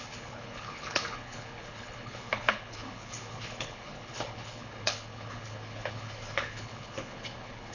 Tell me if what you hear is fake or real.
fake